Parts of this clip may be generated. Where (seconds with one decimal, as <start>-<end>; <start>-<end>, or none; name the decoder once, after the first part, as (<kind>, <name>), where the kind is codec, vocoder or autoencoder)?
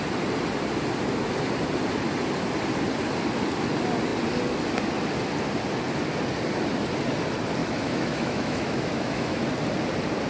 7.6-9.4 (autoencoder, DAC-VAE)